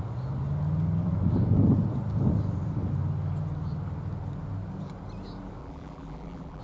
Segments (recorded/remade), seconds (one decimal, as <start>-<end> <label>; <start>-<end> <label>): 0.0-5.6 recorded; 5.6-6.6 remade